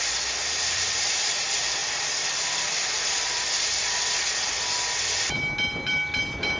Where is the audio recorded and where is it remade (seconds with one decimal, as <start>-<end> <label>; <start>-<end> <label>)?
0.0-0.4 recorded; 0.4-1.4 remade; 1.4-1.8 recorded; 1.8-4.1 remade; 4.1-6.6 recorded